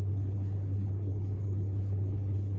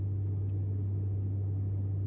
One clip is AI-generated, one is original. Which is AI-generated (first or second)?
first